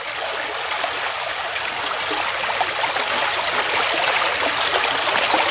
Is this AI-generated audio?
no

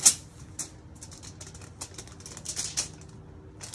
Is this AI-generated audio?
no